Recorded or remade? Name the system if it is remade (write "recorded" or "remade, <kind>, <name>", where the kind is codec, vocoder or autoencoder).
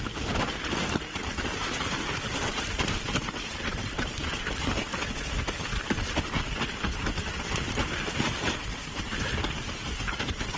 recorded